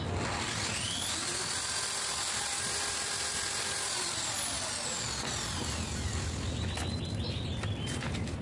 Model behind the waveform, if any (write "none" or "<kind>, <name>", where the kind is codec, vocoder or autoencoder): none